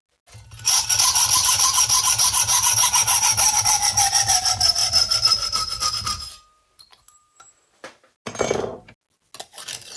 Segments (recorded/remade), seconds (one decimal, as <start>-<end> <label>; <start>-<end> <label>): 0.0-10.0 recorded